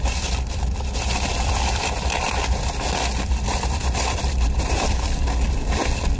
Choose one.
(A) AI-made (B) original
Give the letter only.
A